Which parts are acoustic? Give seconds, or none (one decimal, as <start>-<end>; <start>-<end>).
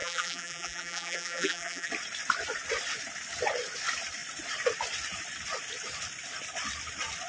1.9-7.3